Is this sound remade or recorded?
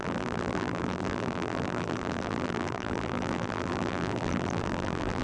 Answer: remade